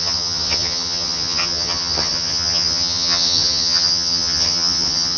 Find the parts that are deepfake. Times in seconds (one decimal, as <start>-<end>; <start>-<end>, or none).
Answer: 0.0-5.2